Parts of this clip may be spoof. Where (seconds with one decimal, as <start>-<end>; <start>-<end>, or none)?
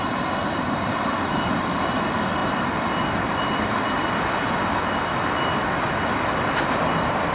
0.4-0.9; 4.0-4.6